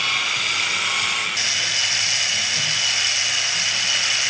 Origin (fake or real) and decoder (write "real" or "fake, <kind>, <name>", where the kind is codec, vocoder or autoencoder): real